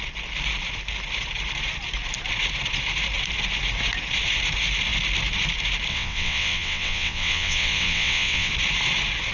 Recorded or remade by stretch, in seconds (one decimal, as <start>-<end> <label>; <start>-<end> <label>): 0.0-5.9 recorded; 5.9-8.5 remade; 8.5-9.3 recorded